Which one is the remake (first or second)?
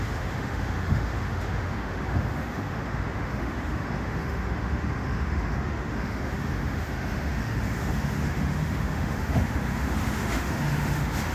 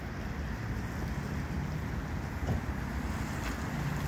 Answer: first